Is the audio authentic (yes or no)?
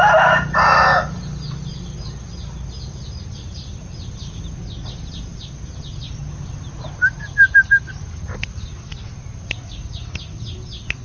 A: yes